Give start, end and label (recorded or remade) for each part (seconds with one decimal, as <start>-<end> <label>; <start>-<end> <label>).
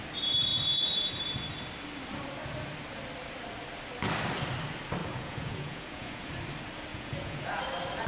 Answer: 0.0-5.0 recorded; 5.0-6.3 remade; 6.3-6.9 recorded; 6.9-7.6 remade; 7.6-8.1 recorded